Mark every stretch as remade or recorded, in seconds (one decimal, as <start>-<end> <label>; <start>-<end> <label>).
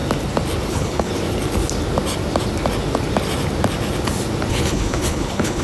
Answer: 0.0-0.7 recorded; 0.7-1.1 remade; 1.1-4.5 recorded; 4.5-5.6 remade